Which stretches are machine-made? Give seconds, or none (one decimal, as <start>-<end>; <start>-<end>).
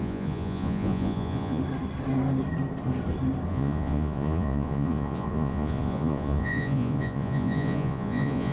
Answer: 0.0-1.6; 3.5-8.5